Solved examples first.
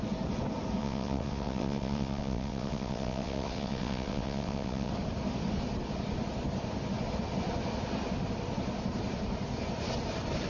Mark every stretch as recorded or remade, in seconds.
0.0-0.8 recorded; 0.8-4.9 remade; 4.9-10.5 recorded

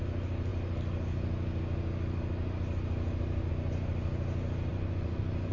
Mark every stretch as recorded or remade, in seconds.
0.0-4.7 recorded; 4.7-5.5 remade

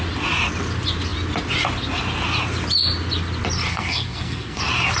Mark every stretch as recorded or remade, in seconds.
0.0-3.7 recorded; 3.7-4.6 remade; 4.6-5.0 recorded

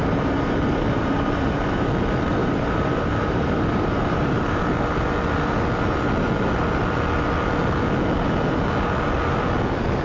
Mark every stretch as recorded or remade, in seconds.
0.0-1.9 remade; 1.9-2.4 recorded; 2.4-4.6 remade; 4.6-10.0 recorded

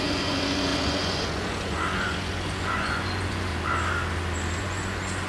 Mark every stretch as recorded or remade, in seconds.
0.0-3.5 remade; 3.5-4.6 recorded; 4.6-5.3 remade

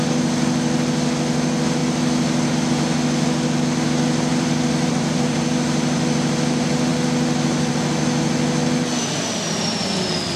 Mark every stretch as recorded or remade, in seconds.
0.0-4.3 recorded; 4.3-5.4 remade; 5.4-10.4 recorded